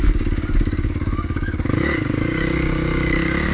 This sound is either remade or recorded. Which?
remade